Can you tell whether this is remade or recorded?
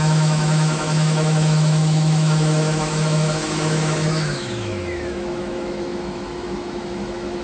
remade